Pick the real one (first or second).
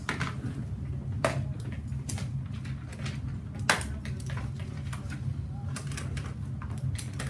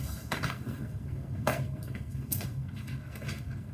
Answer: first